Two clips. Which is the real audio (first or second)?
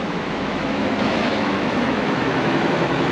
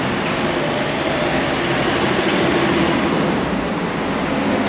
second